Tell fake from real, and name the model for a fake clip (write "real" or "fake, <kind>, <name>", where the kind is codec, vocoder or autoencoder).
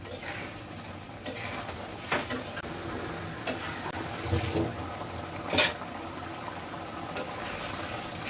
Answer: real